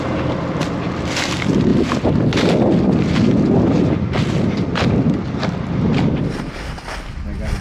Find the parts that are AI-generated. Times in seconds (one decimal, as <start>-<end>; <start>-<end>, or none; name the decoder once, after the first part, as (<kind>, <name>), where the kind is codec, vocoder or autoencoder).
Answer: none